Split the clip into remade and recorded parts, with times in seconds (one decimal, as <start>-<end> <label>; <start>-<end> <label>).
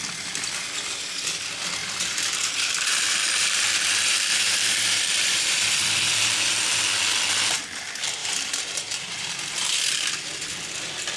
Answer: 0.0-1.8 recorded; 1.8-6.8 remade; 6.8-8.2 recorded; 8.2-10.1 remade; 10.1-11.2 recorded